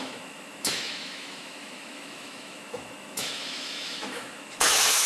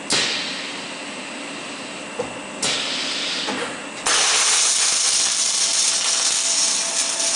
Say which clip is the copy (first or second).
first